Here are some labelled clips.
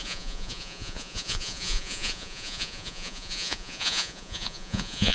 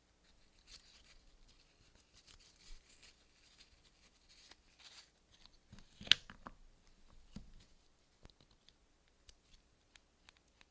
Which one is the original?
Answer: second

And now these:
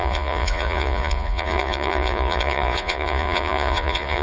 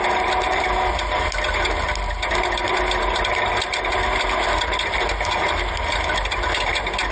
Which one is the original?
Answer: second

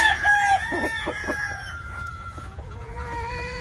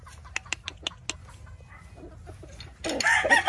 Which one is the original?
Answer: second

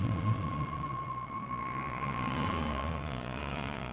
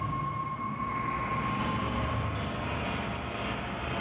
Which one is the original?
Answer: second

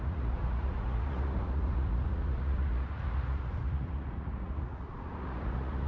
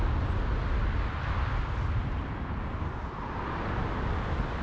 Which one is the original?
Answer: second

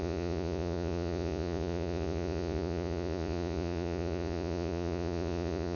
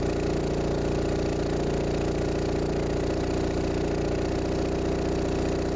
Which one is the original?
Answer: second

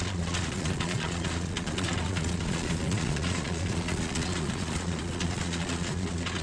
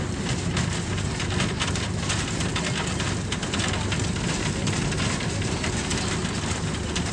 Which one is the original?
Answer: second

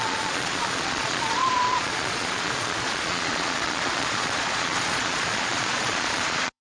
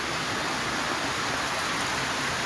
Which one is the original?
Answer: second